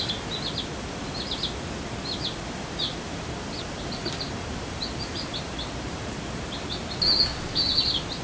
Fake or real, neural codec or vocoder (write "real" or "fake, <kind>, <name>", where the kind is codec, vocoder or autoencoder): real